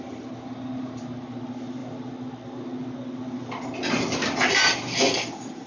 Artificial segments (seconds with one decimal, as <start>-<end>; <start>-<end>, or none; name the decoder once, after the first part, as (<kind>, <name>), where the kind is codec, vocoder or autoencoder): none